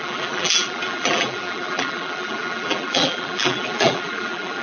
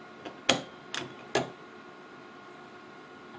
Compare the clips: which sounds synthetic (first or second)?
first